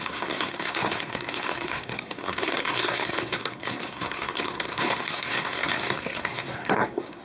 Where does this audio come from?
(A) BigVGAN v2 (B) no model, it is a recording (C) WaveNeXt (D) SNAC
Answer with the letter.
D